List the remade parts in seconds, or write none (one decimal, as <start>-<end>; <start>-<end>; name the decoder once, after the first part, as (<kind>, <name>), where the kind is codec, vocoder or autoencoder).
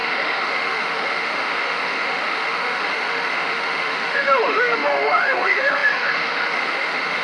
0.0-7.2 (autoencoder, DAC-VAE)